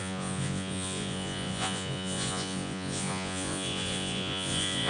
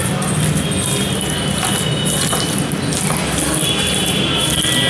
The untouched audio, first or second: second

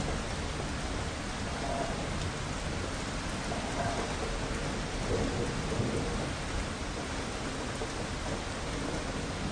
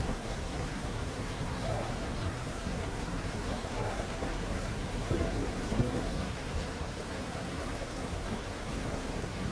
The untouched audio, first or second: first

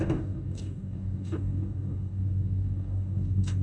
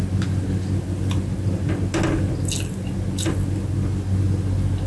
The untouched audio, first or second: second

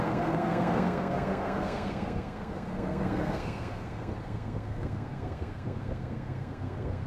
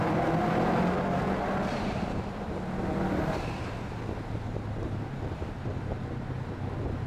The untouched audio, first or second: second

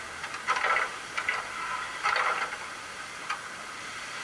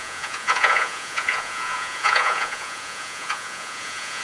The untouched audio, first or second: first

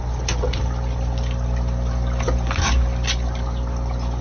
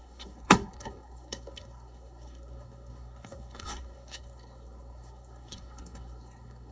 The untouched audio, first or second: first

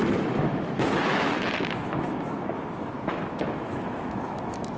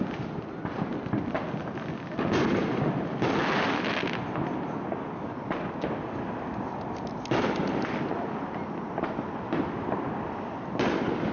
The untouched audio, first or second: second